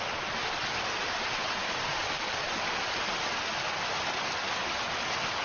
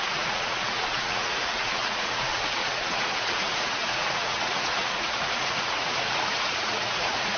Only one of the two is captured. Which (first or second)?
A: first